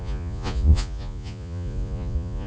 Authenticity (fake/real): fake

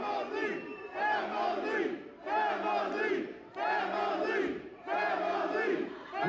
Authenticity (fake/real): real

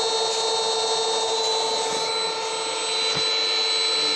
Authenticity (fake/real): real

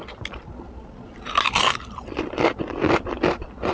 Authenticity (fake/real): real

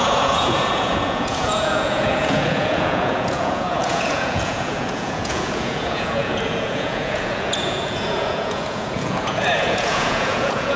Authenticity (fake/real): fake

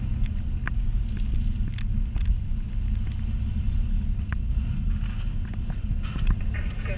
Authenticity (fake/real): real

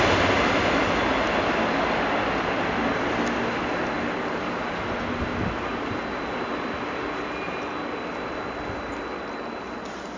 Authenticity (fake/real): real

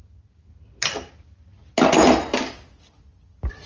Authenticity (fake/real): real